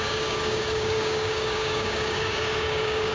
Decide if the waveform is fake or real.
fake